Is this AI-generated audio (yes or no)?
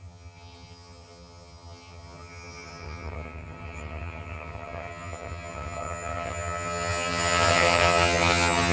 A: yes